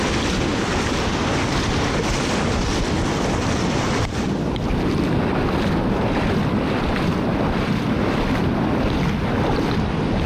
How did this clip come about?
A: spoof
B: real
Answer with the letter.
B